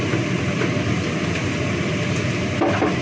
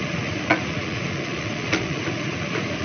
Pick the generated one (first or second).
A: second